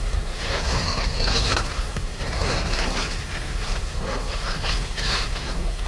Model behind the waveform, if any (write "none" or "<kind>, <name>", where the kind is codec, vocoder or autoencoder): codec, SNAC